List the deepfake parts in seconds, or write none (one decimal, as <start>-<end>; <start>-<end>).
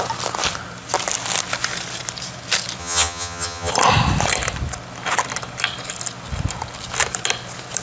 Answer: 2.8-3.7